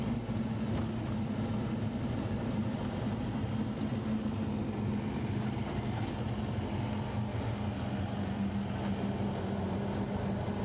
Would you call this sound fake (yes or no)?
no